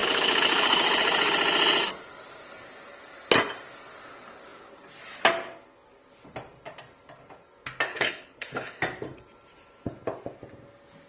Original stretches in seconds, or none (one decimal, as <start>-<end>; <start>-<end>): 1.3-7.9; 8.8-11.1